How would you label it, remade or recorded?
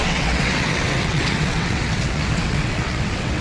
remade